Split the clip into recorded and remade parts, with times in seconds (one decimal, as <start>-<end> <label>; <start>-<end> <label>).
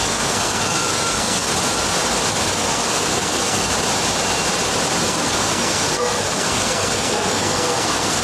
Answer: 0.0-1.5 remade; 1.5-2.3 recorded; 2.3-3.7 remade; 3.7-5.0 recorded; 5.0-8.2 remade